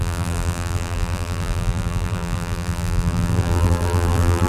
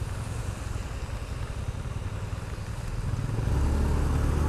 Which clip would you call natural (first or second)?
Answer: second